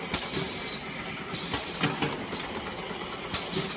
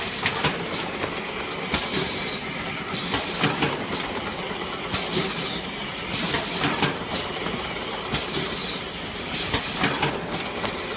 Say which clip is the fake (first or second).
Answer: second